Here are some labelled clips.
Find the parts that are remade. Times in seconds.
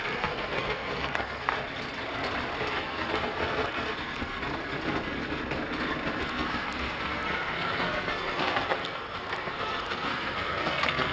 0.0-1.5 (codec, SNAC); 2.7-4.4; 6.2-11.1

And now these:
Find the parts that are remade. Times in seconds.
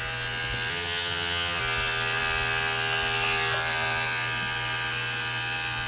0.7-1.6 (vocoder, HiFi-GAN)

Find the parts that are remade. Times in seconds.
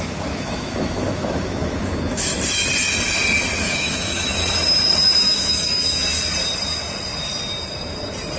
0.0-2.3 (autoencoder, DAC-VAE); 3.6-4.4; 5.2-6.1